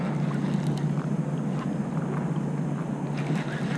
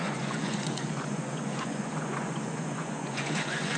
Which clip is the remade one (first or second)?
second